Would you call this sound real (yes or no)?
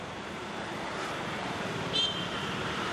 no